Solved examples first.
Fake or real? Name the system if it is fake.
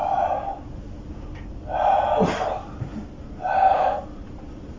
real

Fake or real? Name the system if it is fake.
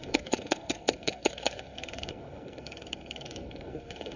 fake, codec, SNAC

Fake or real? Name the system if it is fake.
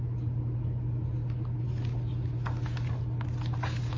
real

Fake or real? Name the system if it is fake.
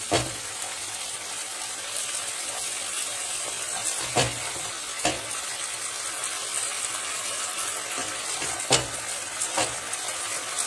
real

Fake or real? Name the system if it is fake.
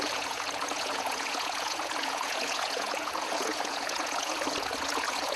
fake, vocoder, Vocos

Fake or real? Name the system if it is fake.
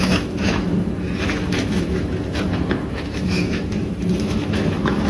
fake, autoencoder, DAC-VAE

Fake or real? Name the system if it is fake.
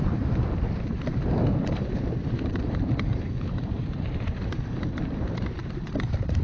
fake, vocoder, BigVGAN v2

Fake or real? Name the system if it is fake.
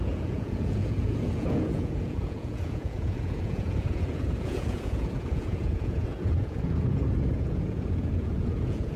fake, vocoder, Vocos